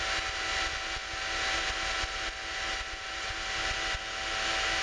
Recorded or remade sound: recorded